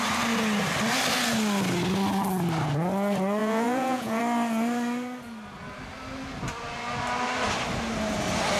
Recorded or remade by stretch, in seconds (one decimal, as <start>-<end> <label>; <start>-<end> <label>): 0.0-3.4 recorded; 3.4-4.2 remade; 4.2-8.6 recorded